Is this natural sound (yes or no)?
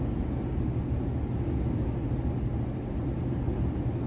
yes